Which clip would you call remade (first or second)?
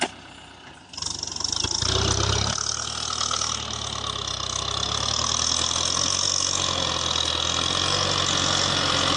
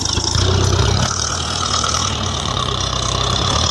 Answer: second